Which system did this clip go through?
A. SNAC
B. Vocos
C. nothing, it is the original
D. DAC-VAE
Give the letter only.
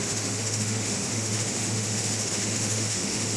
D